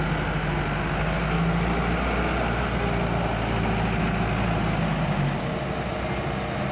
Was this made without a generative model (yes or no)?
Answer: yes